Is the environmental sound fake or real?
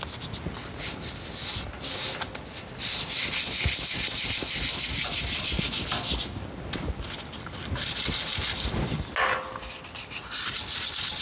real